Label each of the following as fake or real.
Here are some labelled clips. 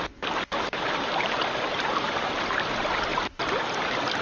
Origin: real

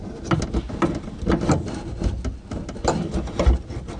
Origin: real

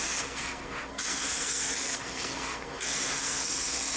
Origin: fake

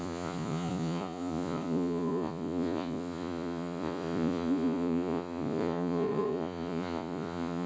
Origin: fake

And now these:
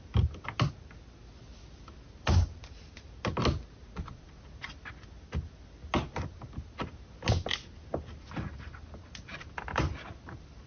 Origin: real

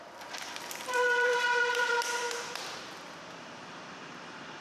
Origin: fake